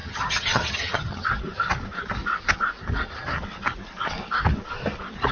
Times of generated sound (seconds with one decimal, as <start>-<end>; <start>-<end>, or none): 0.0-1.3